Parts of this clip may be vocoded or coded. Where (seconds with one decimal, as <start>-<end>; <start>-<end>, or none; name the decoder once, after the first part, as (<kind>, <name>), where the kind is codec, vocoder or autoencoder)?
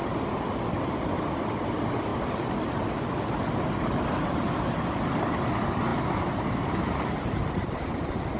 none